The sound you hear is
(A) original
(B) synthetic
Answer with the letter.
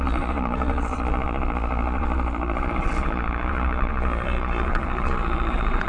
B